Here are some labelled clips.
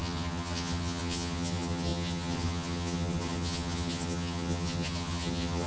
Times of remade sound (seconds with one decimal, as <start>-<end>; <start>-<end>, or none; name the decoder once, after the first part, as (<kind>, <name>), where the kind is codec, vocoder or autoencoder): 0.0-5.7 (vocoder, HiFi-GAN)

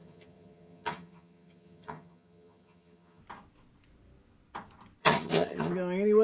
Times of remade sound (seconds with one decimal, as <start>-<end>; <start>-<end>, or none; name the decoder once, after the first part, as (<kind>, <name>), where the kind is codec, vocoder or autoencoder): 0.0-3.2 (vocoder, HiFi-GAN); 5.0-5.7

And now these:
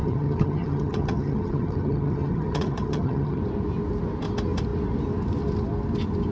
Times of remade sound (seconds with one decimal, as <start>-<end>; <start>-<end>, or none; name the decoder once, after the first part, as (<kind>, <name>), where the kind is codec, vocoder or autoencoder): 0.0-3.4 (vocoder, HiFi-GAN)